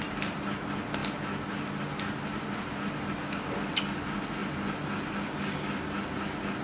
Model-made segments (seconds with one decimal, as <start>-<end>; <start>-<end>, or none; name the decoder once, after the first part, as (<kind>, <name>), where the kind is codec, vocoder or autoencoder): none